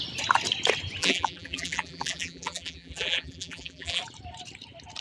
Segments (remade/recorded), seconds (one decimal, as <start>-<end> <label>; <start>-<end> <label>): 0.0-1.0 recorded; 1.0-4.0 remade; 4.0-5.0 recorded